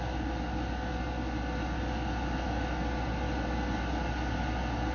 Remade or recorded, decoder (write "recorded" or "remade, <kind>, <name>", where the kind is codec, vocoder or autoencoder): recorded